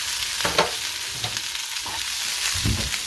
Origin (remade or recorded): recorded